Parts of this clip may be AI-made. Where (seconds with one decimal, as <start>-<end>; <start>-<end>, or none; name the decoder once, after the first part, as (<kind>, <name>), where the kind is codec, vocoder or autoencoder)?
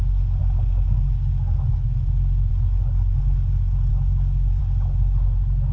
3.9-4.6 (codec, DAC)